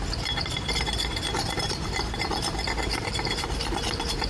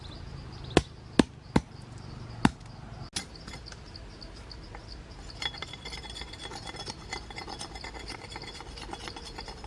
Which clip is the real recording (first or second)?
second